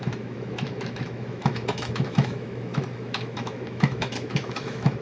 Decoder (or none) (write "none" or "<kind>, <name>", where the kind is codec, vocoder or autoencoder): autoencoder, DAC-VAE